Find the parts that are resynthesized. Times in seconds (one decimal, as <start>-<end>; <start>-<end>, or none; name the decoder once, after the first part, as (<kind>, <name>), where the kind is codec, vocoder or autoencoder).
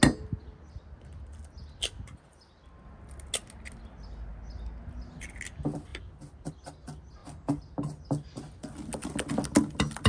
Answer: none